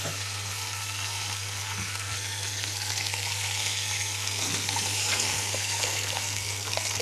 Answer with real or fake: fake